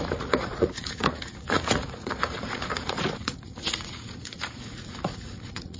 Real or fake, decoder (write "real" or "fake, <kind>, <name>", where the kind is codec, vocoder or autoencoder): fake, vocoder, Vocos